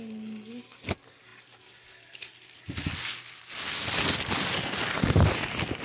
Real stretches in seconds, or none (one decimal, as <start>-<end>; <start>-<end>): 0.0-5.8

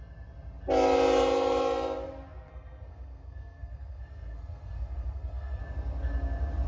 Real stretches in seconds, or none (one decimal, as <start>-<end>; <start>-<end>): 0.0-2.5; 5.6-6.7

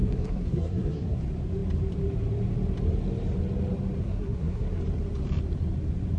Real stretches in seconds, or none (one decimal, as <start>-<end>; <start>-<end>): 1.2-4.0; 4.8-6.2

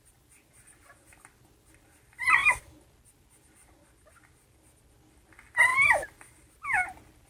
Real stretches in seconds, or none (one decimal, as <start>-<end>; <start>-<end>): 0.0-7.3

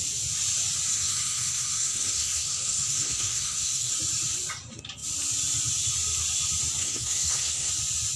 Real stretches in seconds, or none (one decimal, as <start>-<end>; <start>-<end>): 0.0-0.9; 3.9-6.8; 7.7-8.2

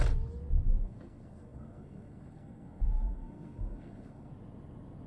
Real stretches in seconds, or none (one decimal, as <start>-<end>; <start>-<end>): 0.0-0.8; 4.3-5.1